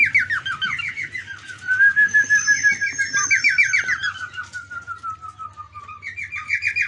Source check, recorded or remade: recorded